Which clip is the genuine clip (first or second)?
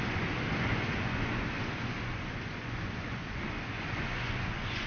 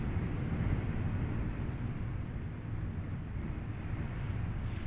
second